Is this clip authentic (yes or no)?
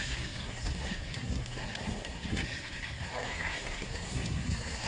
no